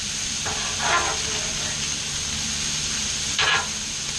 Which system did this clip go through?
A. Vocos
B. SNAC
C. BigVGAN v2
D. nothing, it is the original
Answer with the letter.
C